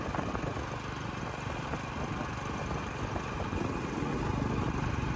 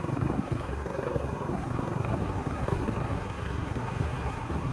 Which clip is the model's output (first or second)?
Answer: second